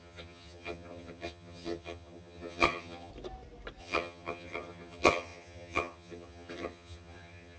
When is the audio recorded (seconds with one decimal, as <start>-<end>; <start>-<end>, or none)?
3.1-3.8